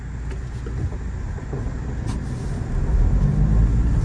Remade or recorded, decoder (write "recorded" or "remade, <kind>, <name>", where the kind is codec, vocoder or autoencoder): recorded